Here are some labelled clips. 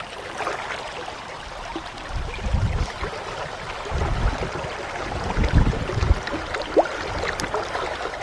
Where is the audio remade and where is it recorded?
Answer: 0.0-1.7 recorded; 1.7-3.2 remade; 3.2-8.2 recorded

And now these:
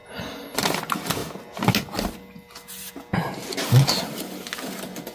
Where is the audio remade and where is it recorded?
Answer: 0.0-5.1 recorded

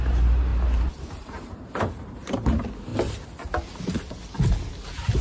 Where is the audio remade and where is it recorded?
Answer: 0.0-2.9 remade; 2.9-4.7 recorded; 4.7-5.2 remade